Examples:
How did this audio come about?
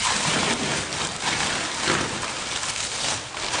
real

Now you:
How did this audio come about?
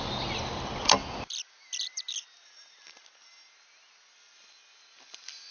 real